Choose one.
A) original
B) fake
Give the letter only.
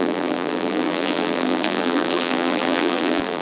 B